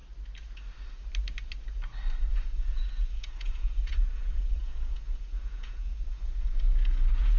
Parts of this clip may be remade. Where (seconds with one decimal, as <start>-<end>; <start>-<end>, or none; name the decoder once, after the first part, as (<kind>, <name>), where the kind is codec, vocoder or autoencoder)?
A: 2.3-7.4 (vocoder, Vocos)